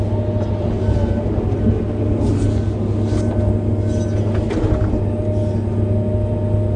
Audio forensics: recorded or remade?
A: recorded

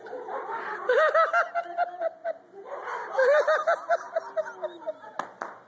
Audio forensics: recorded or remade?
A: recorded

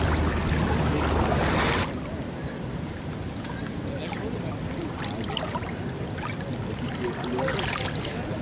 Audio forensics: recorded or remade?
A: recorded